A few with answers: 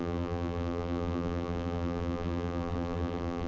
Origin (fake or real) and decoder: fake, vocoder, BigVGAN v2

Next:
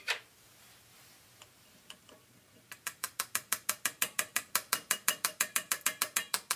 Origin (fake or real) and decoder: fake, vocoder, BigVGAN v2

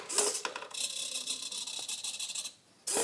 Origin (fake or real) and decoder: real